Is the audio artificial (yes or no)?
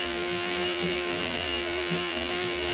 yes